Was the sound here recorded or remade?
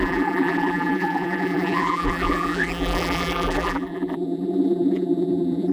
remade